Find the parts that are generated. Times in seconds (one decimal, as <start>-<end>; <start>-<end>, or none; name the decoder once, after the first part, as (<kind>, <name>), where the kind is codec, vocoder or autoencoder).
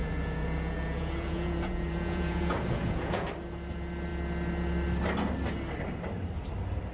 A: 0.0-3.3 (vocoder, Vocos)